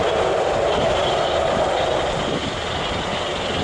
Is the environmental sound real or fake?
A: real